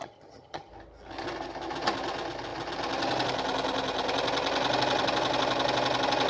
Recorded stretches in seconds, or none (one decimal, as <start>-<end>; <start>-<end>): 0.7-6.3